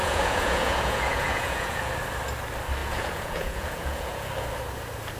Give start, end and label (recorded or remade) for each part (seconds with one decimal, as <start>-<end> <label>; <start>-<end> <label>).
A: 0.0-1.9 remade; 1.9-2.8 recorded; 2.8-4.3 remade; 4.3-5.2 recorded